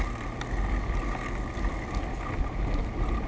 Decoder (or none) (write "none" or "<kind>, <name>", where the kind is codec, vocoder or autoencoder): none